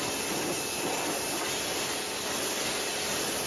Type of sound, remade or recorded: recorded